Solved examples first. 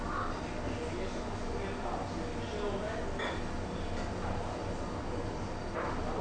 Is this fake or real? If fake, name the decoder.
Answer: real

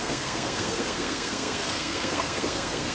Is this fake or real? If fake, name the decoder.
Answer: fake, codec, SNAC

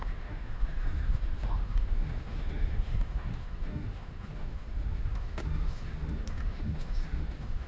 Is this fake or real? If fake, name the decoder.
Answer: fake, autoencoder, DAC-VAE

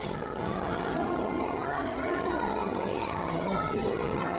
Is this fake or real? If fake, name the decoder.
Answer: fake, vocoder, HiFi-GAN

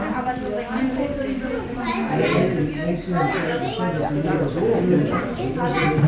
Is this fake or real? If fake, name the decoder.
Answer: real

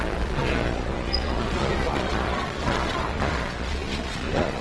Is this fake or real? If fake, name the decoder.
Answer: fake, vocoder, Vocos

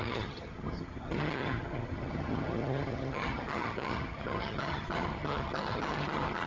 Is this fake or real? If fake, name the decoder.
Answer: fake, vocoder, HiFi-GAN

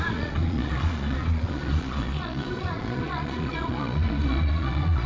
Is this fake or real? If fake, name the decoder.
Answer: fake, vocoder, Vocos